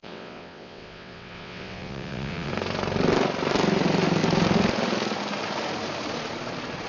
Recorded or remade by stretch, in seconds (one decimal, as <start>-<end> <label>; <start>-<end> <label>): 0.0-2.5 remade; 2.5-6.9 recorded